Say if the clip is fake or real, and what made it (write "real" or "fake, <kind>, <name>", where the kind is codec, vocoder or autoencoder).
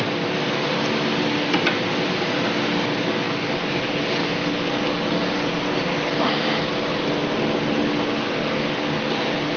real